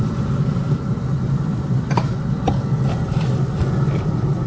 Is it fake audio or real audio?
fake